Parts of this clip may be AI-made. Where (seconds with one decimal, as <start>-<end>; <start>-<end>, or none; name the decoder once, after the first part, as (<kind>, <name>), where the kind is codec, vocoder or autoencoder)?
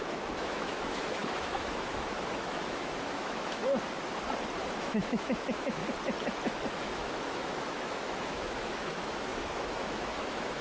0.0-3.6 (autoencoder, DAC-VAE); 4.8-5.8; 6.7-10.6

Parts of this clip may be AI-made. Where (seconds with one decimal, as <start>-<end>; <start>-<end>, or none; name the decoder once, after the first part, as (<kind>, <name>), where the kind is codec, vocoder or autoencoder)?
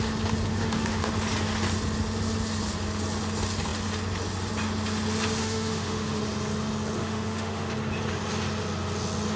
0.5-1.1 (autoencoder, DAC-VAE); 5.4-6.2; 7.0-7.7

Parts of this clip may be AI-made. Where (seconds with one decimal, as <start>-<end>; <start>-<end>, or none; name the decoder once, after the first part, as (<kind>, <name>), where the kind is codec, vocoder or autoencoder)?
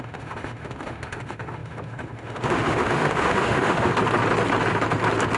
0.0-3.9 (autoencoder, DAC-VAE)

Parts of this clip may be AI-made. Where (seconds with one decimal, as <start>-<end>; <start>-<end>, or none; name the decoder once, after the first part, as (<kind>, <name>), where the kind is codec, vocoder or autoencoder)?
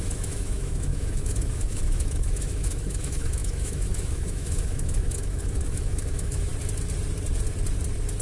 0.0-6.5 (autoencoder, DAC-VAE)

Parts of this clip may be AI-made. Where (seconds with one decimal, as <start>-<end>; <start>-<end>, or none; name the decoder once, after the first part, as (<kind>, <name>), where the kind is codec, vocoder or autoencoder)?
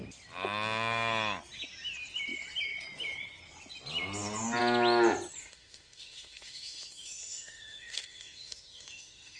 5.4-9.4 (autoencoder, DAC-VAE)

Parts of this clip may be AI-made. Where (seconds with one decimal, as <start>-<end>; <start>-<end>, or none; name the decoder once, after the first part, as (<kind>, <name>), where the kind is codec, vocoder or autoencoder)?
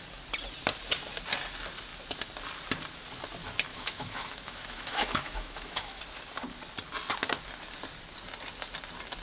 3.7-6.0 (autoencoder, DAC-VAE)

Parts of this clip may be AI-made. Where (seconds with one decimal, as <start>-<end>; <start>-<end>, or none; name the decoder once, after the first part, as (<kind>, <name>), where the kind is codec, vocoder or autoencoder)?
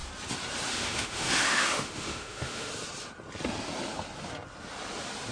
0.7-2.7 (autoencoder, DAC-VAE)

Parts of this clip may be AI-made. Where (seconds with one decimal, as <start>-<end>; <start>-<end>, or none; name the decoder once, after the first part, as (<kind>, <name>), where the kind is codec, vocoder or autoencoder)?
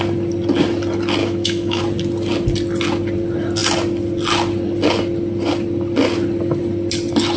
1.2-1.8 (autoencoder, DAC-VAE)